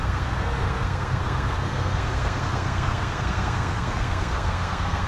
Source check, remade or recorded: remade